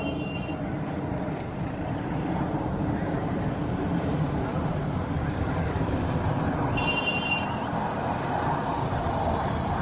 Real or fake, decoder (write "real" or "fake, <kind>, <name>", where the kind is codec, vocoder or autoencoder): fake, vocoder, BigVGAN v2